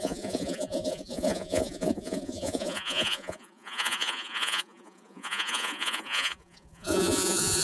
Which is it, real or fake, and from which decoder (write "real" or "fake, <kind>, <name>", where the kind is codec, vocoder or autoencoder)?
fake, vocoder, Vocos